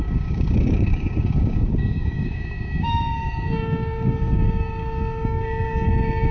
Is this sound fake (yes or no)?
yes